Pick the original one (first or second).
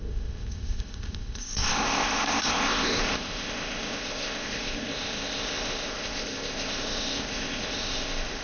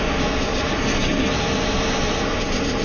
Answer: second